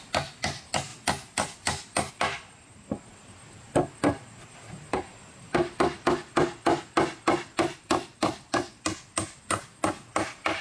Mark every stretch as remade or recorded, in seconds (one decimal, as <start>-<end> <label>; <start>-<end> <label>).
0.0-10.6 recorded